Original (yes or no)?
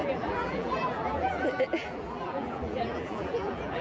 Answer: no